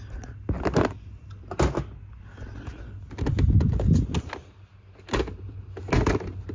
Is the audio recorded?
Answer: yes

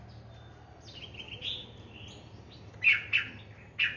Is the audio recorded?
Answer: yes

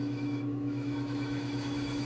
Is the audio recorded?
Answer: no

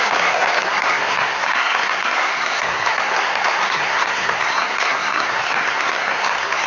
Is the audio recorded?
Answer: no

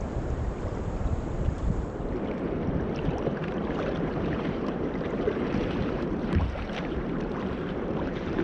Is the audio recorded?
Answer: no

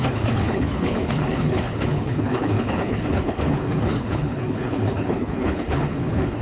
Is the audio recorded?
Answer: no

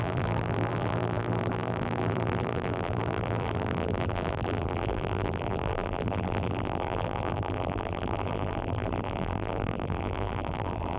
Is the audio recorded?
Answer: no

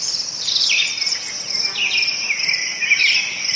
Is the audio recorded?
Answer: yes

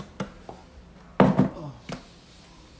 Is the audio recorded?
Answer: yes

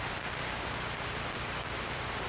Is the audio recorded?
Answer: no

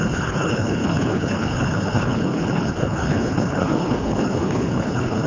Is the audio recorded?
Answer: no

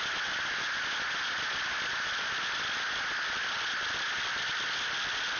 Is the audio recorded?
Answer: yes